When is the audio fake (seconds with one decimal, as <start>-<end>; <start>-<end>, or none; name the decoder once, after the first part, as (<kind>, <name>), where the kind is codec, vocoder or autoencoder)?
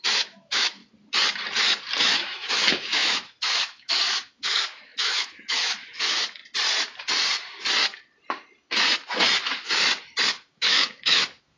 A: 0.0-0.8 (autoencoder, DAC-VAE); 2.0-6.4; 10.3-11.6